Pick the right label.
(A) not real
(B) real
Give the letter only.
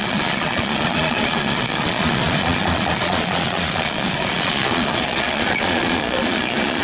A